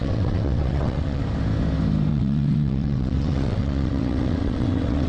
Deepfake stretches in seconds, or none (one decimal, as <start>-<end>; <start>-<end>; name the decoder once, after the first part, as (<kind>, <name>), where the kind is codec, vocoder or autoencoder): 0.0-1.2 (vocoder, WaveNeXt); 2.1-5.1